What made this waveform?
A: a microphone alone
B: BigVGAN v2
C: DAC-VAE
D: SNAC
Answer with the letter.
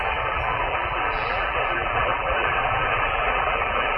B